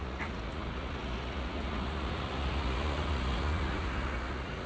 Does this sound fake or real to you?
fake